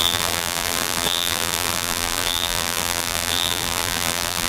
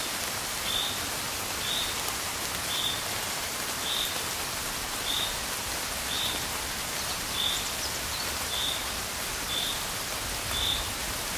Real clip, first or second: second